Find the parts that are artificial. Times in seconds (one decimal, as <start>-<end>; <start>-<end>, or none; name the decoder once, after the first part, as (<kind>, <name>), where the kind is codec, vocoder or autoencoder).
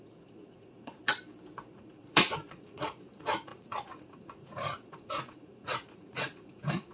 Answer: 0.0-1.0 (vocoder, Vocos); 1.7-6.9